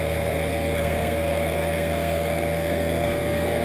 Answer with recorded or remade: remade